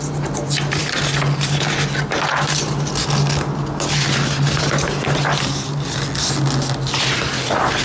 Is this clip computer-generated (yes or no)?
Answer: no